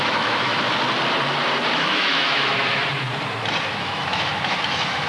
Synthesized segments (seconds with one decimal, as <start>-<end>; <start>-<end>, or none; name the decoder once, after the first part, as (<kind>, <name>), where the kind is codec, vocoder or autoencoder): 0.0-0.5 (autoencoder, DAC-VAE); 1.7-2.8; 3.7-5.1